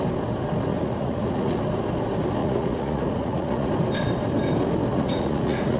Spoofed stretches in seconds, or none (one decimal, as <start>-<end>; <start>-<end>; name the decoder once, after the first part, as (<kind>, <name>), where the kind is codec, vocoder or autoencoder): 0.7-1.6 (vocoder, Vocos); 2.4-3.7; 4.9-5.8